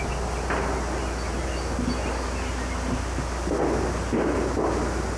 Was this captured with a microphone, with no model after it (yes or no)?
yes